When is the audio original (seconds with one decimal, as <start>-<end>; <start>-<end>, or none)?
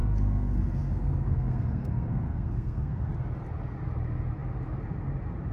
3.1-5.5